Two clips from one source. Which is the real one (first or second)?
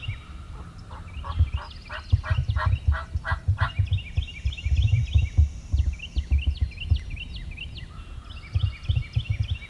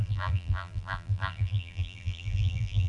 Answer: first